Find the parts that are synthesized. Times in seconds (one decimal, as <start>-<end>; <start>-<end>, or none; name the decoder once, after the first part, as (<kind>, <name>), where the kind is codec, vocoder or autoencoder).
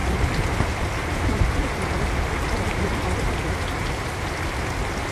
none